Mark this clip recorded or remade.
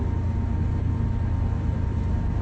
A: recorded